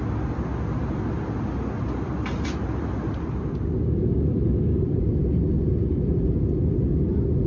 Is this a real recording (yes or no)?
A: yes